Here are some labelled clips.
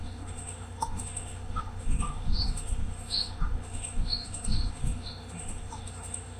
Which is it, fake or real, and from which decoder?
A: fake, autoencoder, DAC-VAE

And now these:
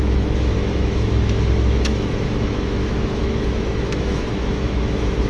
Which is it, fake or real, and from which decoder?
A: fake, autoencoder, DAC-VAE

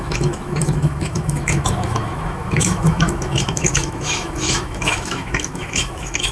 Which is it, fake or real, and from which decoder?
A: fake, autoencoder, DAC-VAE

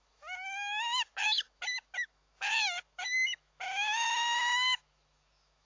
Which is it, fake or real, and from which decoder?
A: fake, autoencoder, DAC-VAE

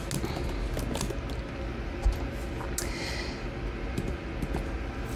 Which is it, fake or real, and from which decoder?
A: real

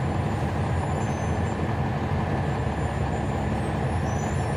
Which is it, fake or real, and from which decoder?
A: real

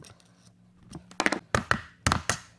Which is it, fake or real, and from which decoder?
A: real